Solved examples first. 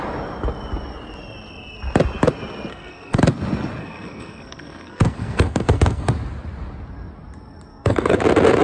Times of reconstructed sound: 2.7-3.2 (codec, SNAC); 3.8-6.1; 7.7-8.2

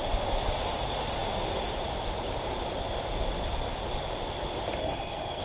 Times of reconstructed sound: 4.8-5.4 (codec, SNAC)

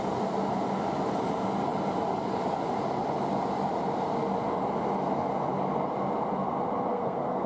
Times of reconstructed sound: 6.9-7.5 (codec, SNAC)